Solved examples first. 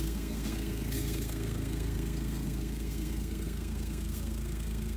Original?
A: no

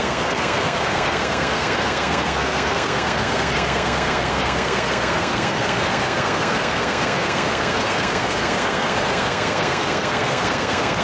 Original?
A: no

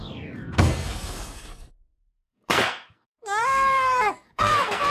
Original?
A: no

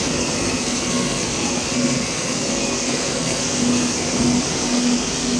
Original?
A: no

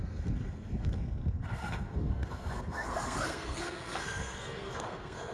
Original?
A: no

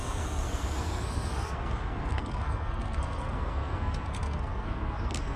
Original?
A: no